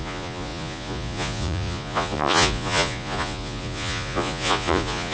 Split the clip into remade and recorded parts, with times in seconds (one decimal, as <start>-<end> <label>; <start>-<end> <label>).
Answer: 0.0-5.1 remade